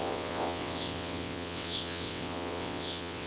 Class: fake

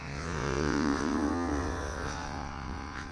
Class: fake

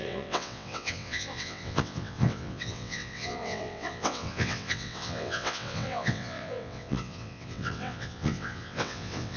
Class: fake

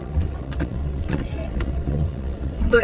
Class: fake